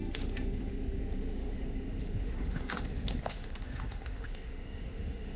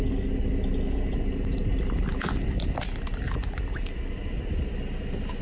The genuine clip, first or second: second